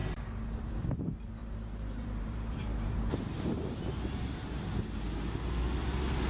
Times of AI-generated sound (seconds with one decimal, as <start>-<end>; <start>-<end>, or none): 1.4-4.6